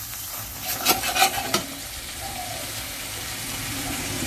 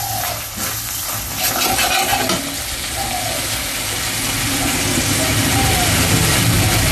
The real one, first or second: second